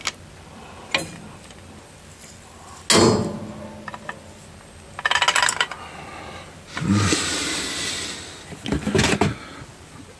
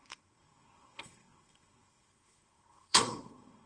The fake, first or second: second